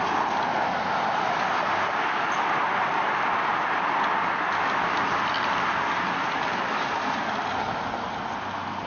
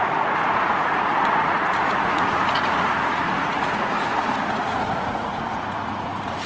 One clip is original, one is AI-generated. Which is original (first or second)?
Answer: first